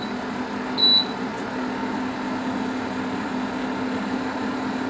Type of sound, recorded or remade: recorded